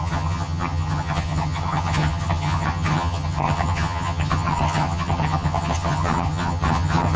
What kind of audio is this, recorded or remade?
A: remade